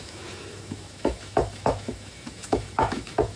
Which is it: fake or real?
fake